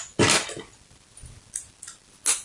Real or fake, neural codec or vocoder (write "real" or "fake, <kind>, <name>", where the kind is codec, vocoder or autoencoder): real